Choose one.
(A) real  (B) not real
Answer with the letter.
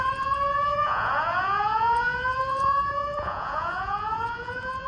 B